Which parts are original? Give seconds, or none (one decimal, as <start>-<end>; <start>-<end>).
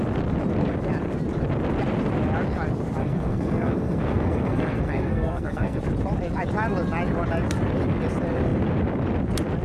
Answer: 0.0-3.0; 5.8-9.6